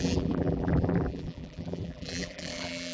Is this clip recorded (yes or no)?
no